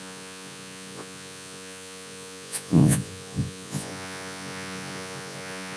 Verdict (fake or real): fake